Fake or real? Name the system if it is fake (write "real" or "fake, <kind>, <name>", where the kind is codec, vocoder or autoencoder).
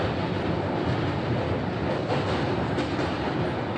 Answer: real